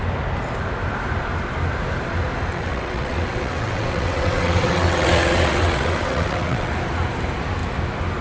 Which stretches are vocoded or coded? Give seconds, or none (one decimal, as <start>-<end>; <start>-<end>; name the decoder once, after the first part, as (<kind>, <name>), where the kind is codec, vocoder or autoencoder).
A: 2.5-6.7 (vocoder, WaveNeXt)